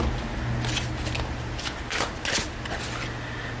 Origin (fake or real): real